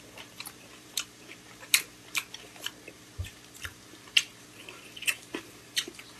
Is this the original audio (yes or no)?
no